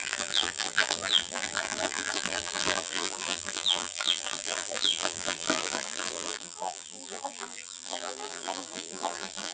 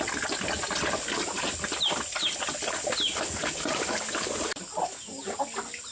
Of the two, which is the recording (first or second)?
second